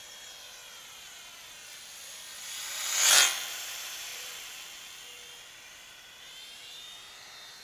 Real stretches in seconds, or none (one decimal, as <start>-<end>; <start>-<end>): 0.6-3.5; 4.1-5.7